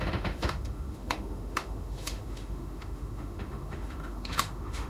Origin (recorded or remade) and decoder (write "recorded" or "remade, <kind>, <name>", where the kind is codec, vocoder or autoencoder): remade, autoencoder, DAC-VAE